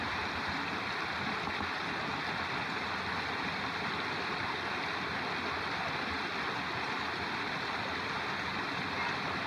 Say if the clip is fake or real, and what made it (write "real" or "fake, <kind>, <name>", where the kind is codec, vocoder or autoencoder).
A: real